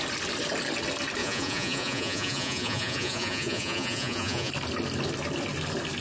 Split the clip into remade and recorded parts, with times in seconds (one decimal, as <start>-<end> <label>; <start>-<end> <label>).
0.0-1.2 recorded; 1.2-4.5 remade; 4.5-6.0 recorded